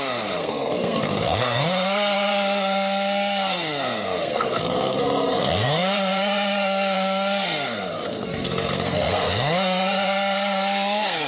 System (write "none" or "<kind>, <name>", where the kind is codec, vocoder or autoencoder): codec, SNAC